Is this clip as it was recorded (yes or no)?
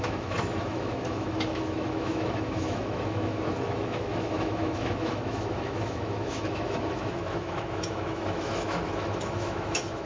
no